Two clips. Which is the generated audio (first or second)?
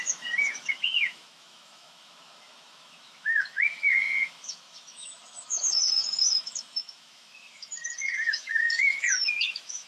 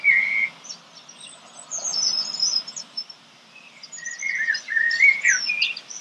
first